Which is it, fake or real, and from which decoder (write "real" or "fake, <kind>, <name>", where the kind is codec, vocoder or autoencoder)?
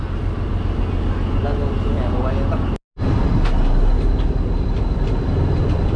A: real